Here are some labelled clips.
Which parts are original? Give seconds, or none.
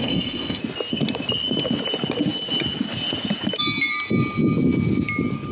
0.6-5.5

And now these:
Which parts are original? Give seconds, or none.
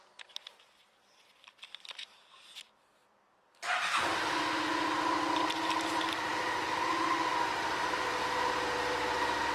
6.3-7.7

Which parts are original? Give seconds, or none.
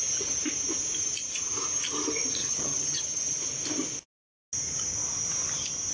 0.0-2.4; 3.5-5.9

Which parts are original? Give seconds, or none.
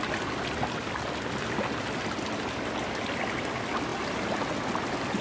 0.0-3.9; 4.4-5.2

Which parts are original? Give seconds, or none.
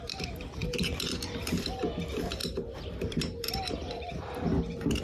none